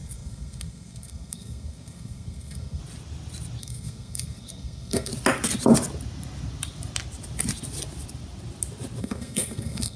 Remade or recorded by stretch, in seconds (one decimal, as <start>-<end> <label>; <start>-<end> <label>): 0.0-2.8 remade; 2.8-3.6 recorded; 3.6-5.1 remade; 5.1-9.0 recorded; 9.0-10.0 remade